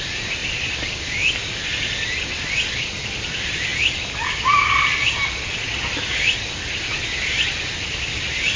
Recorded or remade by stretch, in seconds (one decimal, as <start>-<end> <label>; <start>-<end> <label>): 0.0-8.6 recorded

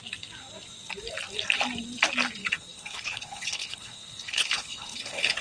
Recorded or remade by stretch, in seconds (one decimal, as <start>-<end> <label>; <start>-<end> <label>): 0.0-2.4 recorded; 2.4-5.4 remade

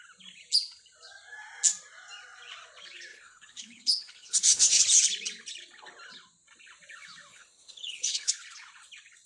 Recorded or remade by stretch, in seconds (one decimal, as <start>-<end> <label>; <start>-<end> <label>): 0.0-3.1 recorded; 3.1-4.8 remade; 4.8-7.3 recorded; 7.3-8.3 remade; 8.3-9.3 recorded

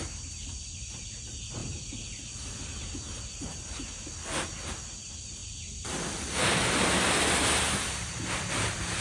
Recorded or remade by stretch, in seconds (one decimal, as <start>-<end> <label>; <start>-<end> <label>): 0.0-9.0 recorded

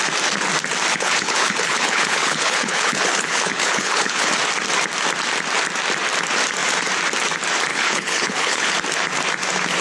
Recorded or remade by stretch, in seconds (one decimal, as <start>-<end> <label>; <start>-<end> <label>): 0.0-0.9 recorded; 0.9-4.3 remade; 4.3-7.7 recorded; 7.7-8.7 remade; 8.7-9.8 recorded

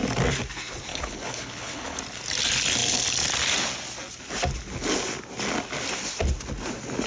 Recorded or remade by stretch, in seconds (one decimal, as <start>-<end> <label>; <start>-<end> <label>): 0.0-0.9 recorded; 0.9-2.0 remade; 2.0-7.1 recorded